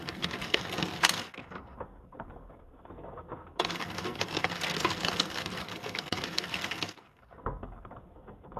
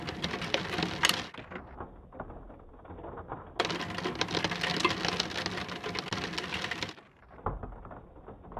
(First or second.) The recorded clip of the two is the second